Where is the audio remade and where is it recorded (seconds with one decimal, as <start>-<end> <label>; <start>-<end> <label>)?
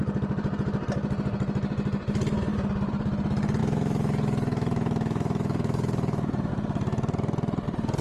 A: 0.0-3.6 recorded; 3.6-6.5 remade; 6.5-8.0 recorded